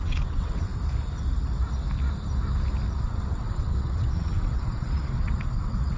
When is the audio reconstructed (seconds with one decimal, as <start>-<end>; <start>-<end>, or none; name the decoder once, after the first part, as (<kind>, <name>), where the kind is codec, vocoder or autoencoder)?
0.0-0.7 (vocoder, WaveNeXt); 2.9-6.0